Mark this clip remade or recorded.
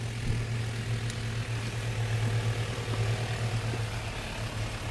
recorded